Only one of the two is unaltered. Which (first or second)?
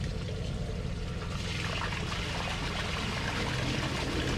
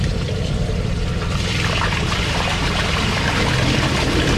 first